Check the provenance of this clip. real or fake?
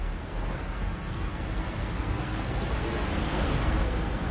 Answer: fake